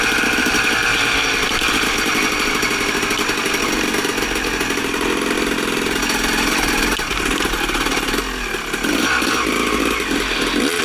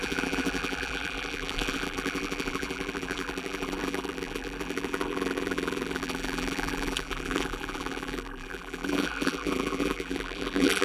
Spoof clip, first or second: second